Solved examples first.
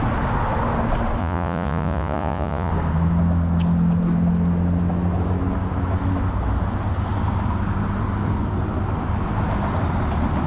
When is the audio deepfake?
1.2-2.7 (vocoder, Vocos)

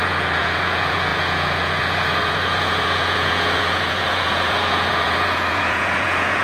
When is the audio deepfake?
0.0-6.4 (vocoder, Vocos)